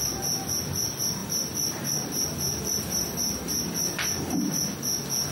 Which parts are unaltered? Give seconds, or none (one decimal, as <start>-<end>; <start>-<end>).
0.0-1.2; 4.4-5.3